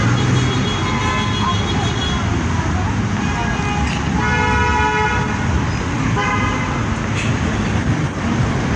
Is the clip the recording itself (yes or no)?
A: yes